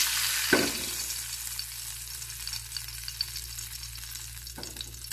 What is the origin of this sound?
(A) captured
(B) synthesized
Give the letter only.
A